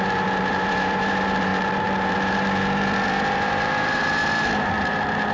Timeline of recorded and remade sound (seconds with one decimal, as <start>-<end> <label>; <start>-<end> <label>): 0.0-5.3 remade